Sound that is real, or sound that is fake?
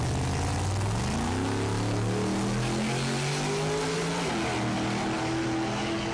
real